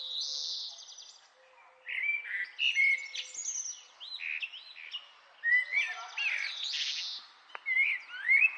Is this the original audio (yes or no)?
yes